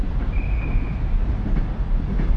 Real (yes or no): yes